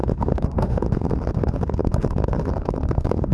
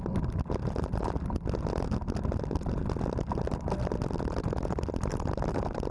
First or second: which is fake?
first